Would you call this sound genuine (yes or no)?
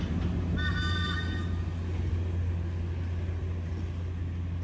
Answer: yes